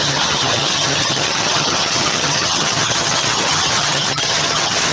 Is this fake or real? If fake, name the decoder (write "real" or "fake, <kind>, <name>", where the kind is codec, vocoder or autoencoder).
fake, vocoder, HiFi-GAN